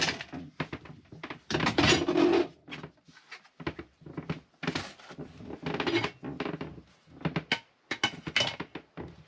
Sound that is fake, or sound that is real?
real